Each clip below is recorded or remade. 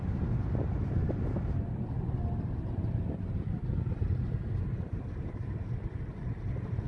recorded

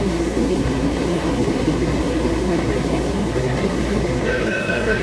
remade